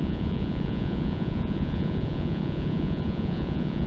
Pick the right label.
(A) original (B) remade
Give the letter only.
B